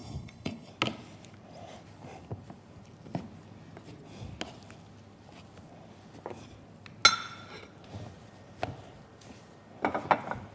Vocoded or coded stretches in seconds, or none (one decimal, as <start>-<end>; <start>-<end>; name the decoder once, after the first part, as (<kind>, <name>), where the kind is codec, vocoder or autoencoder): 0.0-0.7 (codec, HILCodec)